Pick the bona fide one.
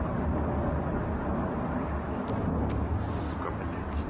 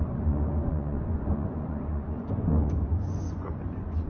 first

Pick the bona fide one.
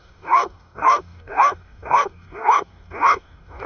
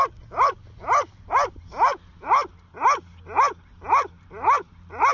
second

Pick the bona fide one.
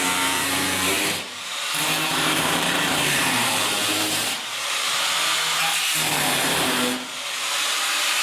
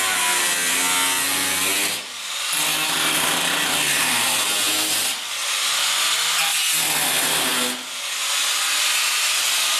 second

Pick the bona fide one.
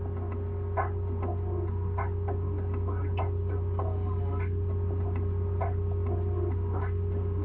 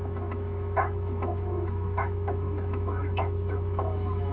first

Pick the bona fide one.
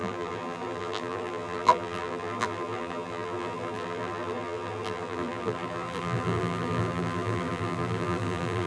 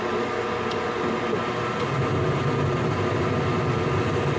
second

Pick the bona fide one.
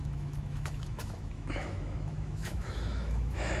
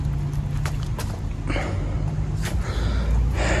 second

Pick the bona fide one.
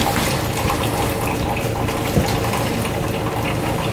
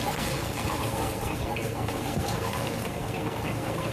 first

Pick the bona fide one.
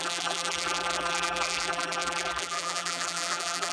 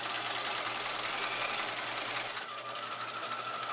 second